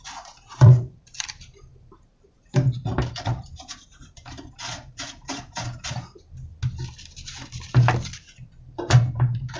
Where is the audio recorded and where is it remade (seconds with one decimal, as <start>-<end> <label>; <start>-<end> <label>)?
0.0-6.5 remade; 6.5-8.6 recorded; 8.6-9.6 remade